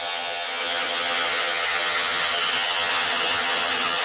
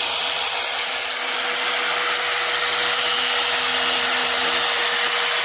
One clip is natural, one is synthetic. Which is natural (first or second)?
second